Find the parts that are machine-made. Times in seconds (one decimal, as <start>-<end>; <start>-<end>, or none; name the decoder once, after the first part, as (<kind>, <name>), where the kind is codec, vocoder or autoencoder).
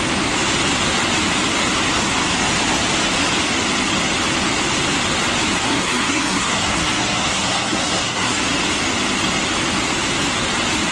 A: 5.6-8.4 (codec, SNAC)